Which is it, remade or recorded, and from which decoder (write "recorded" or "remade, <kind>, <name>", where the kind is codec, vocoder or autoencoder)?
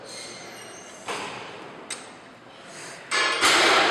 recorded